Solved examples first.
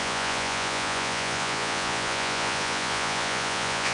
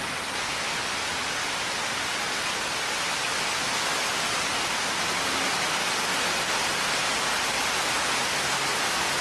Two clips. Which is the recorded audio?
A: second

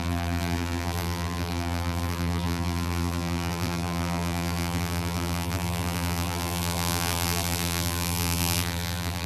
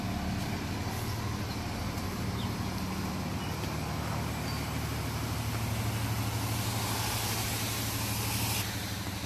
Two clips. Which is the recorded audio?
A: second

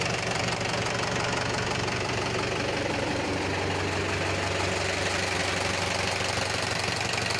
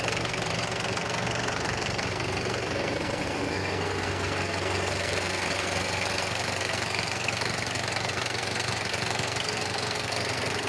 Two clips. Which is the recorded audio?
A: first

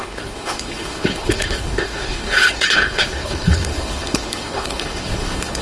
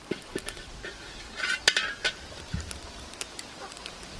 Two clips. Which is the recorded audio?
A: second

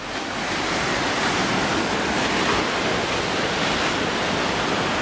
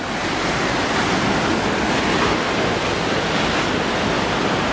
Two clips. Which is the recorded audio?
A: second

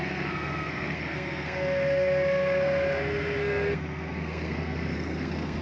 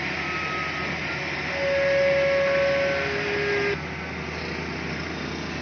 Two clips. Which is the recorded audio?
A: second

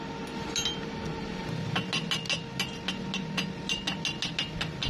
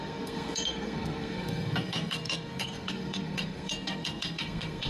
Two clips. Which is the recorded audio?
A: first